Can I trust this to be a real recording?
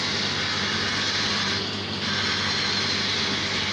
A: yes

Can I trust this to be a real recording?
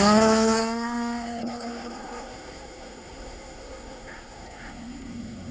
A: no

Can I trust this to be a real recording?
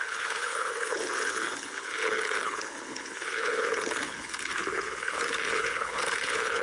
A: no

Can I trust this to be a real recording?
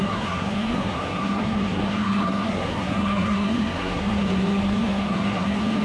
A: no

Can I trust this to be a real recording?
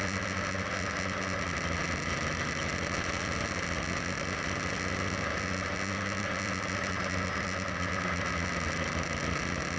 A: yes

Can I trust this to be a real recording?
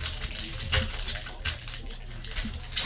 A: yes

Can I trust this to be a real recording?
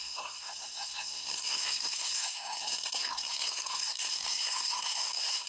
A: no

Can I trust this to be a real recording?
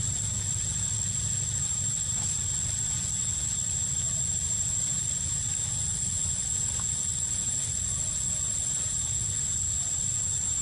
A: yes